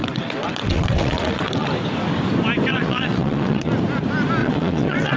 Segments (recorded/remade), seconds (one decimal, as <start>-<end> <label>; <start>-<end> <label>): 0.0-1.7 remade; 1.7-2.7 recorded; 2.7-3.7 remade; 3.7-4.4 recorded; 4.4-5.2 remade